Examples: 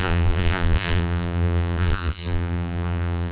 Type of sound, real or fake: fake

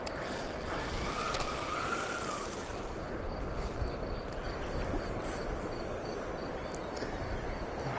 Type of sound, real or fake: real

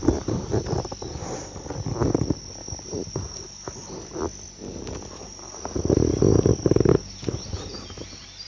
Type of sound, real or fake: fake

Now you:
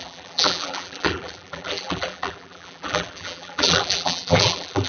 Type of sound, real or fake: fake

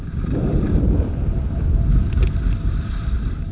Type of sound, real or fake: fake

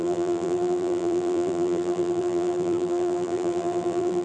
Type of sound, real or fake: fake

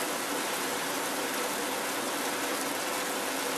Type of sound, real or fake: real